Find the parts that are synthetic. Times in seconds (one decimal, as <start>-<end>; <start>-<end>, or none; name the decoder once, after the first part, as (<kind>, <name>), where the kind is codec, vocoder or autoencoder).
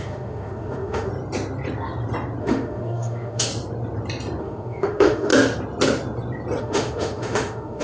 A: 0.0-1.1 (autoencoder, DAC-VAE); 2.4-3.5; 4.4-5.3; 6.6-7.8